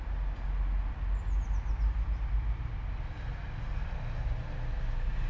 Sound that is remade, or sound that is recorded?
recorded